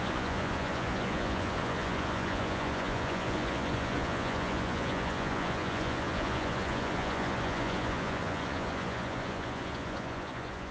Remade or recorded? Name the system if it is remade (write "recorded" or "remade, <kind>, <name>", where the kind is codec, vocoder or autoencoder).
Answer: remade, vocoder, Vocos